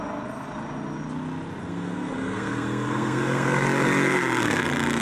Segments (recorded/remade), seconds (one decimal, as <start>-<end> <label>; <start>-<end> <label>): 0.0-1.6 recorded; 1.6-4.6 remade; 4.6-5.0 recorded